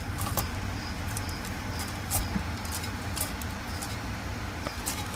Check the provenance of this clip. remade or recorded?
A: recorded